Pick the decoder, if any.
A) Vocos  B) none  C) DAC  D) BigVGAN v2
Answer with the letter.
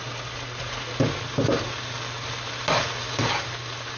B